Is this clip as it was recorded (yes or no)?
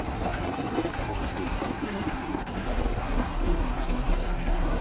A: no